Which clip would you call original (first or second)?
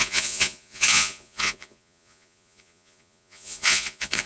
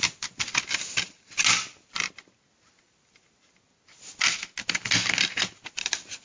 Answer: second